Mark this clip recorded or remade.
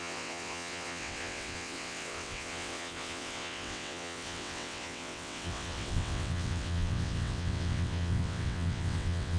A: remade